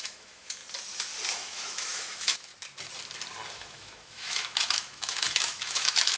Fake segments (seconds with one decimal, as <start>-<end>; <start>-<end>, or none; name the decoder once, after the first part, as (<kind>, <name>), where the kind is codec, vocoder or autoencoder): 0.0-0.6 (autoencoder, DAC-VAE); 1.3-2.5; 3.5-6.2